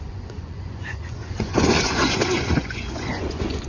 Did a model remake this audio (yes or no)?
yes